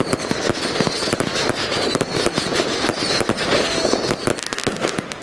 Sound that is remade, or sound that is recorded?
recorded